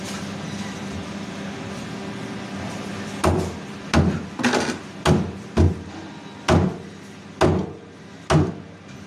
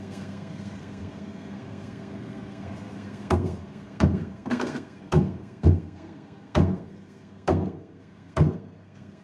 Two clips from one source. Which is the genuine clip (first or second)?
first